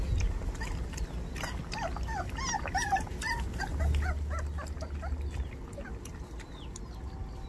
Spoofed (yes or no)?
no